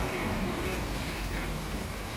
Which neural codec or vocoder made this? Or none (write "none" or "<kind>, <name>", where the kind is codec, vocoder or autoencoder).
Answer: codec, DAC